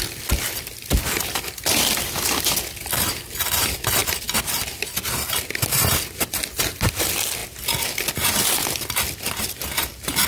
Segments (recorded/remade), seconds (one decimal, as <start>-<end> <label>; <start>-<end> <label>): 0.0-10.3 recorded